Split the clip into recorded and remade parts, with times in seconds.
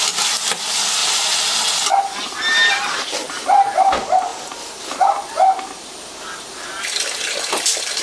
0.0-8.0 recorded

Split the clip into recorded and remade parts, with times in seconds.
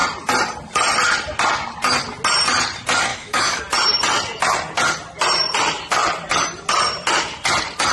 0.0-3.1 recorded; 3.1-3.6 remade; 3.6-7.9 recorded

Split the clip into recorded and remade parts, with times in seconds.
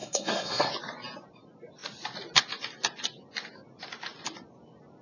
0.0-0.7 remade; 0.7-5.0 recorded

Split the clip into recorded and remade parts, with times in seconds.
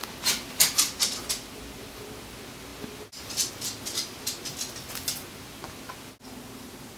0.0-7.0 recorded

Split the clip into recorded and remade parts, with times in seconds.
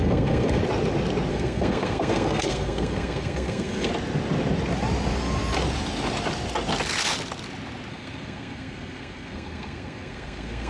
0.0-0.6 remade; 0.6-1.3 recorded; 1.3-3.9 remade; 3.9-7.9 recorded; 7.9-10.7 remade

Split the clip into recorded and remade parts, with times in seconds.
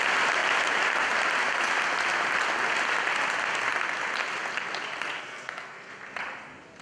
0.0-5.2 recorded; 5.2-5.9 remade; 5.9-6.8 recorded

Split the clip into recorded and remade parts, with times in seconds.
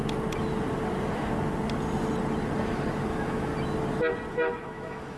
0.0-3.1 recorded; 3.1-3.5 remade; 3.5-4.3 recorded; 4.3-5.2 remade